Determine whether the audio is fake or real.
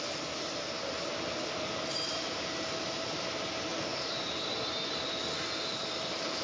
real